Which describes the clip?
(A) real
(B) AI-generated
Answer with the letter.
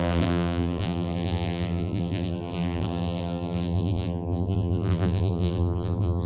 B